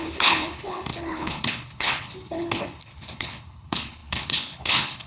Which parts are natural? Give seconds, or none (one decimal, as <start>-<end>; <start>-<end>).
none

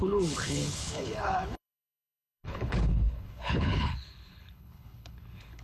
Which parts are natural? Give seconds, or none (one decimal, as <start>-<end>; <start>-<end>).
none

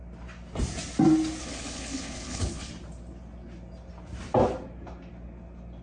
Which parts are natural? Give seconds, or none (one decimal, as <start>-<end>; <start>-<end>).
0.0-1.4; 2.7-5.8

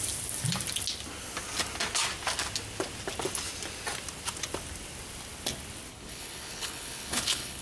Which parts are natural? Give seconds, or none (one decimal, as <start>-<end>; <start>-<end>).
0.0-5.9